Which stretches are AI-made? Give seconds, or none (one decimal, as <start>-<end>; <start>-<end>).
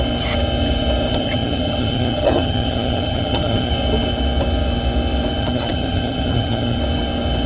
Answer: 1.1-3.7; 5.4-6.8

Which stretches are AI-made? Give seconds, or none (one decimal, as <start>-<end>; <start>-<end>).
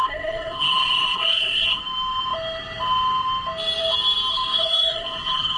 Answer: 0.0-1.8; 4.3-5.6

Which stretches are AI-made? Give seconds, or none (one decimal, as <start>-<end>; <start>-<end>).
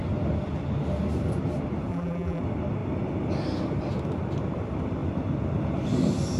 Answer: 1.9-2.4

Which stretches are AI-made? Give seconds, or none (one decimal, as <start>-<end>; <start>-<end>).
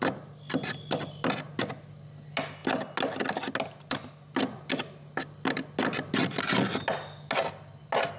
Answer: none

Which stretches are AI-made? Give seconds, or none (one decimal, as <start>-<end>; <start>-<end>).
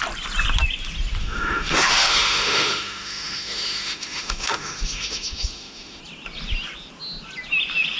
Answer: 1.2-6.0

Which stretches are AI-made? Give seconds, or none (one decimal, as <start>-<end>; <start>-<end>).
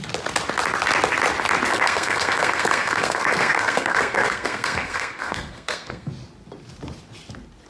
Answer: 1.7-6.1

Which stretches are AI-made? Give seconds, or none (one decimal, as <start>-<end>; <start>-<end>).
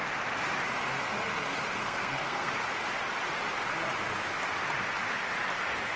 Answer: 1.8-2.5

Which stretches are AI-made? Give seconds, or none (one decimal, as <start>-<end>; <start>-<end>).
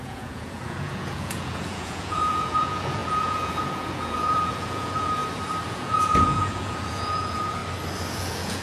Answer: 0.0-5.2; 5.7-7.6; 8.2-8.6